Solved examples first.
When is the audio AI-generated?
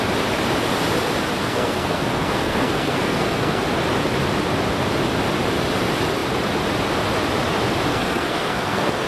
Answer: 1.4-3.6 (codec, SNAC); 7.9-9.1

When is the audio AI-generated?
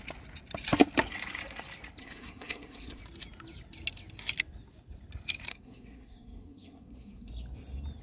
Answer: 2.0-3.0 (codec, SNAC); 5.5-7.3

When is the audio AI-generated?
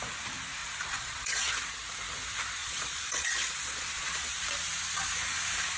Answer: 0.6-1.5 (vocoder, Vocos); 2.6-4.4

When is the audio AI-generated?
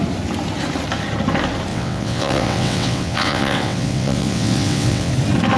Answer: 1.7-5.1 (vocoder, WaveNeXt)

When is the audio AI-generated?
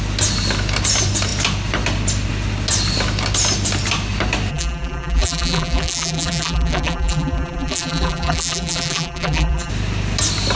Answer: 4.5-9.7 (vocoder, BigVGAN v2)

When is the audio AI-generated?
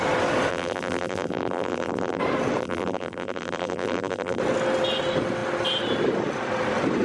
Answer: 0.5-2.2 (vocoder, BigVGAN v2); 2.6-4.4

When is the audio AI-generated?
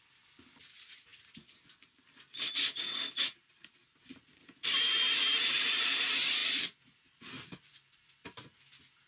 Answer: none